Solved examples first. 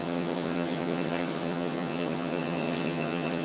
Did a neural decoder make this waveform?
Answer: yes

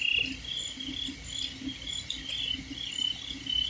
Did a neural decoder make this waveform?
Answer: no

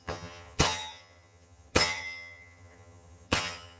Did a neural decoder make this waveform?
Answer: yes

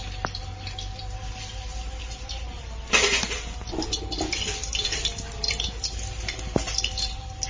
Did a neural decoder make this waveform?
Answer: no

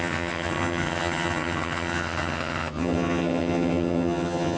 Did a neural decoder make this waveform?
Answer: yes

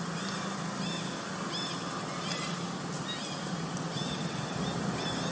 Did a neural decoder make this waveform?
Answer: no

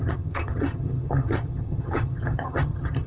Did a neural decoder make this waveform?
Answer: yes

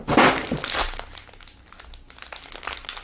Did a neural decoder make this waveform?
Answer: no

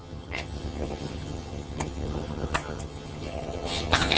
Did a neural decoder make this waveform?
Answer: yes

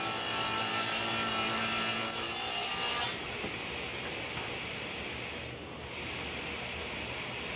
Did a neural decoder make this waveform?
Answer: no